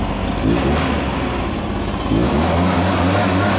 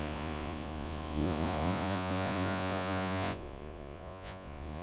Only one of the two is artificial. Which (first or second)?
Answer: second